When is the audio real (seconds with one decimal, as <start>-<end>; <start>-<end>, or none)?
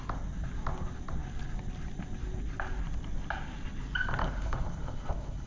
0.0-4.2